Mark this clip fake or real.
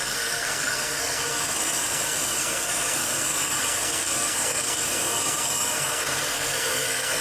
fake